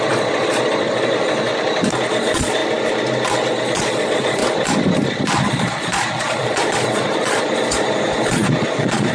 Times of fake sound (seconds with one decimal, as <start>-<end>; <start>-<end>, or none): 0.0-1.5; 2.1-2.6; 3.5-4.4; 5.5-9.1